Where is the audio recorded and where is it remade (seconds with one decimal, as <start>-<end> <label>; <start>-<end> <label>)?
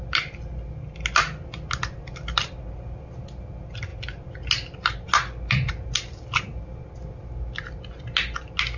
0.0-8.8 recorded